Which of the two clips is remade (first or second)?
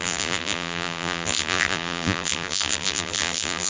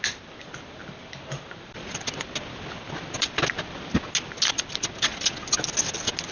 first